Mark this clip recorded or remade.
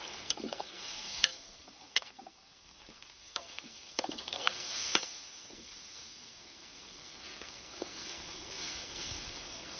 remade